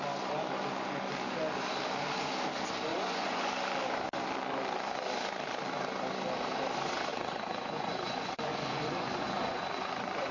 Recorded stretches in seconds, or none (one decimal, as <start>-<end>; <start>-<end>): 0.0-2.9; 3.5-7.1